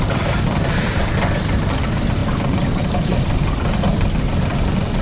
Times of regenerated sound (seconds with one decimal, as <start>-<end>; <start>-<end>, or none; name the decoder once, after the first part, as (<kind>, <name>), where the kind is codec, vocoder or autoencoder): 2.2-4.1 (vocoder, BigVGAN v2)